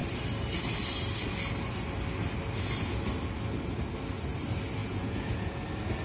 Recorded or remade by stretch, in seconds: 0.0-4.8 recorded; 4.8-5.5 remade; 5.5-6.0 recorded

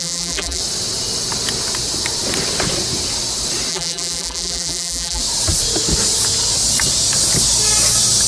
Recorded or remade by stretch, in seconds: 0.0-0.6 remade; 0.6-3.7 recorded; 3.7-5.2 remade; 5.2-8.3 recorded

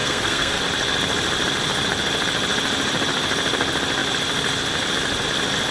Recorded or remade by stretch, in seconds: 0.0-0.6 remade; 0.6-5.7 recorded